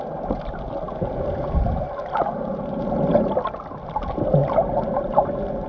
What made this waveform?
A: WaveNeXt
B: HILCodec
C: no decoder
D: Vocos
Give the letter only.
C